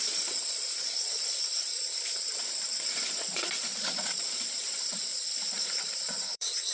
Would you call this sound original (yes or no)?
no